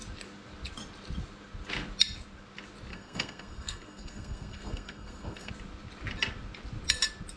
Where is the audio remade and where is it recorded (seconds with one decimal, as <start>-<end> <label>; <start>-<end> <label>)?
0.0-2.9 recorded; 2.9-5.5 remade; 5.5-7.4 recorded